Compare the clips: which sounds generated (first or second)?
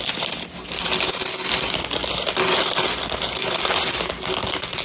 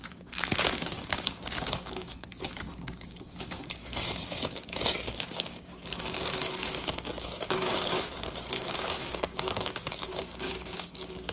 second